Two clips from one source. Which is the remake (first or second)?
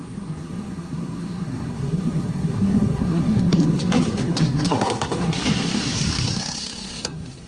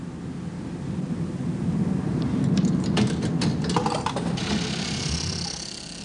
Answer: first